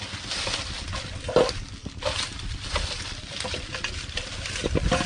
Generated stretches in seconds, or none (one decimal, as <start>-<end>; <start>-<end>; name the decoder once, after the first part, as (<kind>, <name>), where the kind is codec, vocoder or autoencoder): none